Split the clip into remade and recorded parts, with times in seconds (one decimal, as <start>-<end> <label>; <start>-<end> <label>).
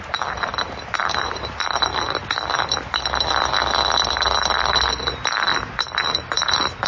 0.0-0.5 remade; 0.5-1.0 recorded; 1.0-1.9 remade; 1.9-6.0 recorded; 6.0-6.9 remade